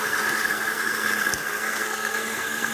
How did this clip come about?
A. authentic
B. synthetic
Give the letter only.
B